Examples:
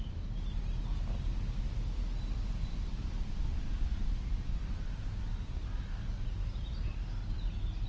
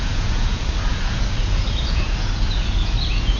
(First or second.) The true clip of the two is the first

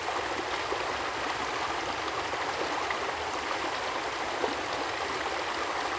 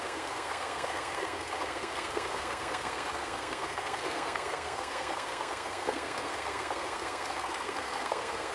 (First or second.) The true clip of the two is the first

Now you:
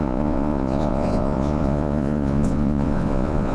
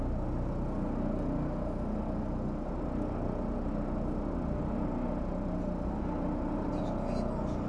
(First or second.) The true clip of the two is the second